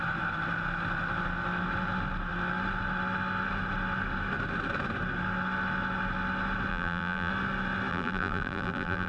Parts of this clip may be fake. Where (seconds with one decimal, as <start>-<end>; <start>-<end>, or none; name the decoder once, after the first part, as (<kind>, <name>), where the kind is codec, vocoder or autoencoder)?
6.7-7.3 (vocoder, BigVGAN v2); 7.9-9.1